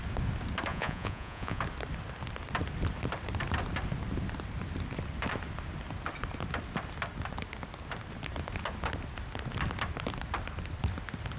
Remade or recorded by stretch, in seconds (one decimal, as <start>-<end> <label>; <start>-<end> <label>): 0.0-0.7 recorded; 0.7-1.6 remade; 1.6-11.4 recorded